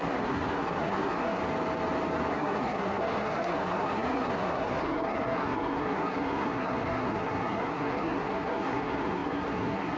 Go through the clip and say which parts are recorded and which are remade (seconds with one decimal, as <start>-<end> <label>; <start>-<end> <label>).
0.0-1.4 remade; 1.4-2.3 recorded; 2.3-10.0 remade